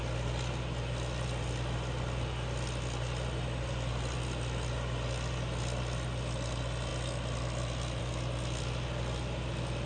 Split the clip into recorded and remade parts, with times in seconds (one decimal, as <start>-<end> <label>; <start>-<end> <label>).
0.0-9.9 recorded